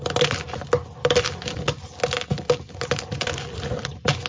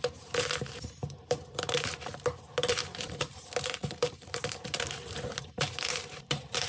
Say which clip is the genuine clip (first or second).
first